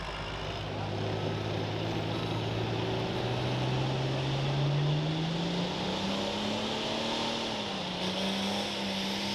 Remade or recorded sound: recorded